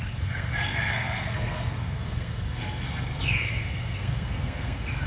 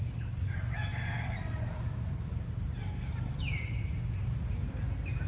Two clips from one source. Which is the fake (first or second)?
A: first